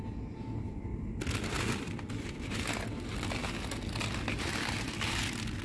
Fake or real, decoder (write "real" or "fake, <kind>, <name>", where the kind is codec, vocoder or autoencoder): real